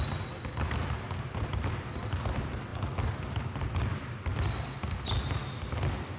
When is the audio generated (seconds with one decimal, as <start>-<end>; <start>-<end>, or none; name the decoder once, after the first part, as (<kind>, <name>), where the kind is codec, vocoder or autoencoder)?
none